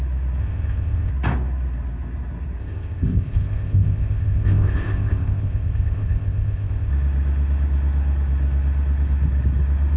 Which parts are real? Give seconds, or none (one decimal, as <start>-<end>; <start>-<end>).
0.0-0.4; 1.1-2.6; 6.9-10.0